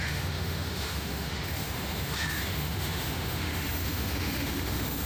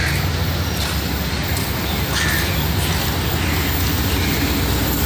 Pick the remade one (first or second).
first